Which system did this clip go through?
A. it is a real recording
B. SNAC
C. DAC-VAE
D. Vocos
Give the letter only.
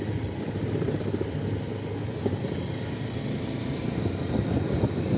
A